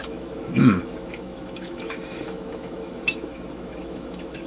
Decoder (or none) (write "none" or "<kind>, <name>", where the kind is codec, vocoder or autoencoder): autoencoder, DAC-VAE